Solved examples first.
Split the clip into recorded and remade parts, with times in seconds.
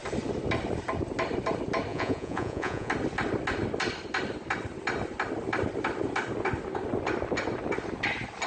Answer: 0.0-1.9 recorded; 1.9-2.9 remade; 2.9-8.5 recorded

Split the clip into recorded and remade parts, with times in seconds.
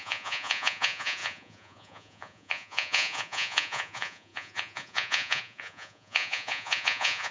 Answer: 0.0-7.3 remade